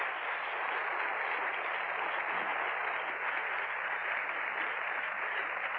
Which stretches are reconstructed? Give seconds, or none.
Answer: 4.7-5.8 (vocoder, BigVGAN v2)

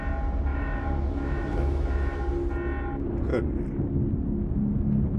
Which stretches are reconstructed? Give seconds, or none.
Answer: 0.5-2.3 (autoencoder, DAC-VAE)